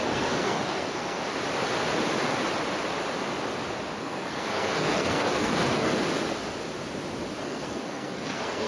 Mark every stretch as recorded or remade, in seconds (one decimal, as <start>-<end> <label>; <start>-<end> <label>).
0.0-1.2 remade; 1.2-4.0 recorded; 4.0-5.9 remade; 5.9-7.4 recorded; 7.4-8.7 remade

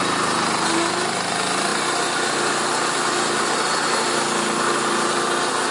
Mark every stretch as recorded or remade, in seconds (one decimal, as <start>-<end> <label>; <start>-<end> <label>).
0.0-5.7 recorded

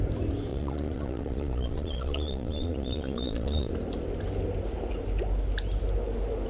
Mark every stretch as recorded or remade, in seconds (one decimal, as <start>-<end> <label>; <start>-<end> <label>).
0.0-0.5 recorded; 0.5-3.7 remade; 3.7-6.5 recorded

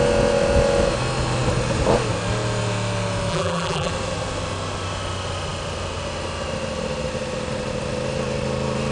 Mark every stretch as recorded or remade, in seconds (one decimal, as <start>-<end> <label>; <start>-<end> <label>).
0.0-3.3 recorded; 3.3-3.9 remade; 3.9-8.9 recorded

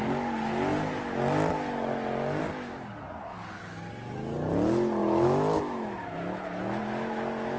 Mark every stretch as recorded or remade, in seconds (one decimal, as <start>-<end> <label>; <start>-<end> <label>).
0.0-5.0 recorded; 5.0-6.8 remade; 6.8-7.6 recorded

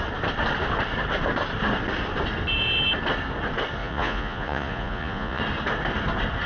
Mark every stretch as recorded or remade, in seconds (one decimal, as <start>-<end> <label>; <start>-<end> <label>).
0.0-3.8 recorded; 3.8-5.4 remade; 5.4-6.5 recorded